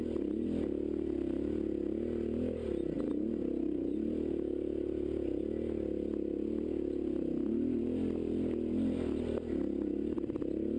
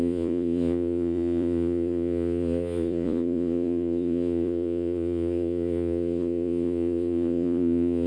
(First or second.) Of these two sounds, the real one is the first